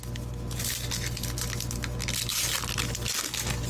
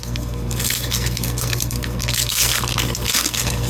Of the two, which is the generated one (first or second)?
second